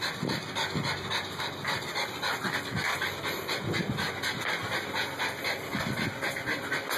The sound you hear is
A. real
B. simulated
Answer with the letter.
A